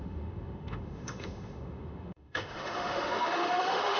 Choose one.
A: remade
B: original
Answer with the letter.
A